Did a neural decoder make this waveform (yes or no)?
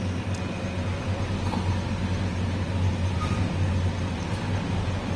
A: no